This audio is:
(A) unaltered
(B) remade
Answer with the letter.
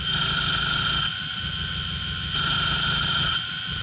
A